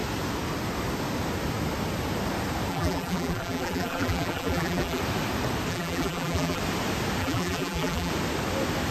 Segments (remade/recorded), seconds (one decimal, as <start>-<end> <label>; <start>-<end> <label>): 0.0-2.7 recorded; 2.7-5.0 remade; 5.0-5.7 recorded; 5.7-6.6 remade; 6.6-7.2 recorded; 7.2-8.1 remade; 8.1-8.9 recorded